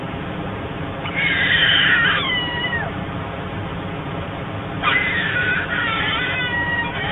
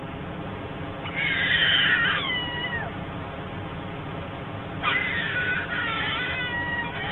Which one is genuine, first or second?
second